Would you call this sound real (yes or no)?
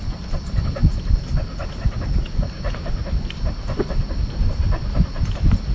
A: yes